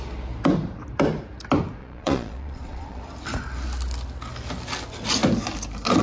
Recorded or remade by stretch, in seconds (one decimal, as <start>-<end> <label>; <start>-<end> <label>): 0.0-1.8 recorded; 1.8-3.0 remade; 3.0-6.0 recorded